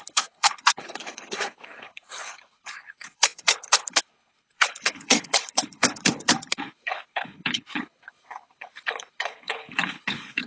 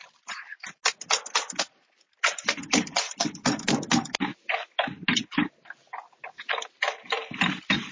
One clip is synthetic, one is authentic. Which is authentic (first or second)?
second